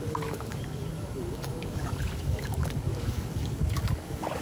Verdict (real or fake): fake